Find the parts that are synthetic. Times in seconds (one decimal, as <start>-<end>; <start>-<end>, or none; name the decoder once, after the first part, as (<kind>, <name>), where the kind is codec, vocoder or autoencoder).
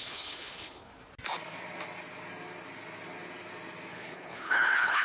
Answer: 0.0-0.9 (codec, HILCodec); 3.9-5.0